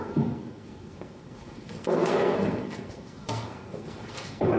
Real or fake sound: fake